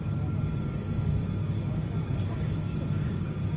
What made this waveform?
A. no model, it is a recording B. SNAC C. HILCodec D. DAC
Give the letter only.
D